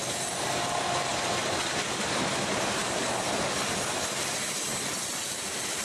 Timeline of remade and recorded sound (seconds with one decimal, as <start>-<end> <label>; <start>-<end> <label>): 0.0-4.7 recorded; 4.7-5.8 remade